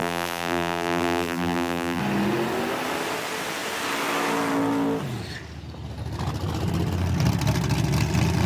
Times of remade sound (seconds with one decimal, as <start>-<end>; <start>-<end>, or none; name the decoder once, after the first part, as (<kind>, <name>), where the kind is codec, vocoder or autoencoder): 0.0-2.0 (vocoder, BigVGAN v2)